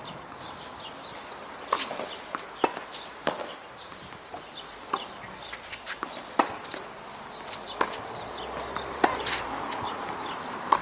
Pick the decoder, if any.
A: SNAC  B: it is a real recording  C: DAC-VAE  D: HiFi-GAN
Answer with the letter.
B